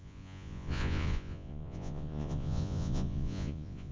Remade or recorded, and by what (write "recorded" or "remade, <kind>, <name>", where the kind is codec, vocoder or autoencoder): remade, vocoder, Vocos